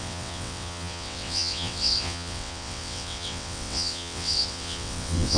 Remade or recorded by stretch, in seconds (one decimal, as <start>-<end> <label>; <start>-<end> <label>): 0.0-5.4 remade